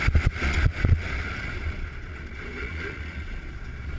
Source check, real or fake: fake